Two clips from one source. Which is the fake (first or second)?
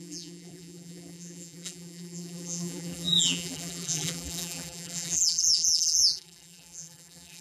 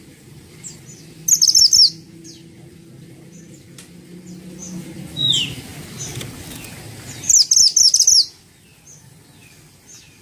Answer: first